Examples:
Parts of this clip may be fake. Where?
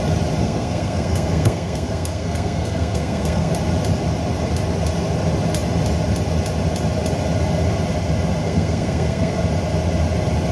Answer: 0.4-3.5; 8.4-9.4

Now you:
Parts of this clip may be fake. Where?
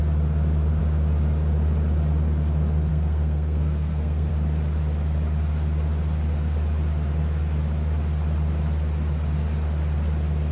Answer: 2.9-4.3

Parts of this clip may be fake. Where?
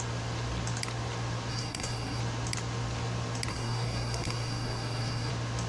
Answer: 1.5-2.2; 3.5-5.3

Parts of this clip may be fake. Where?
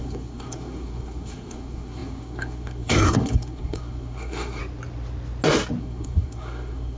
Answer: 0.0-4.6; 5.8-7.0